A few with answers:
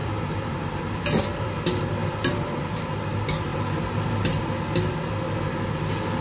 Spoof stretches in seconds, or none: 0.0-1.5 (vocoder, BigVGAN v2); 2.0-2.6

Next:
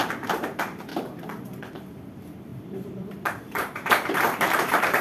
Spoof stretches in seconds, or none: 0.0-0.9 (vocoder, BigVGAN v2); 1.7-5.0

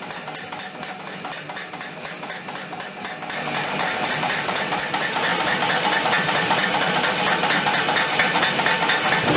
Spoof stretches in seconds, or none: none

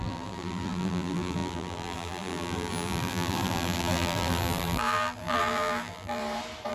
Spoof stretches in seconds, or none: 0.0-6.2 (vocoder, BigVGAN v2)

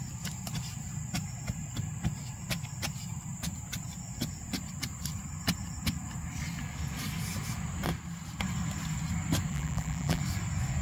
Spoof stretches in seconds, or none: 9.5-10.2 (vocoder, BigVGAN v2)

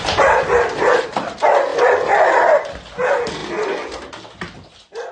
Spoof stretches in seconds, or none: 1.7-2.7 (vocoder, BigVGAN v2)

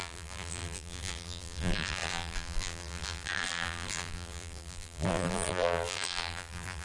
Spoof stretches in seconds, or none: 0.0-6.8 (vocoder, BigVGAN v2)

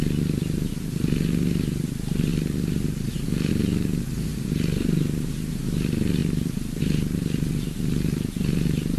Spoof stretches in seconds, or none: 2.3-3.5 (vocoder, BigVGAN v2)